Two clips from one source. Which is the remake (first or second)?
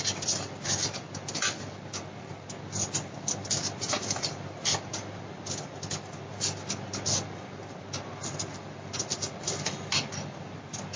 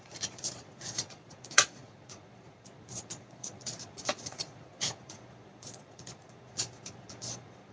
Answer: second